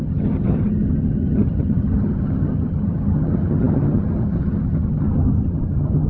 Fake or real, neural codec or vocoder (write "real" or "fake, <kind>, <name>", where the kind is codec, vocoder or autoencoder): fake, vocoder, HiFi-GAN